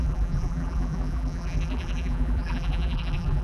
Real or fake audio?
fake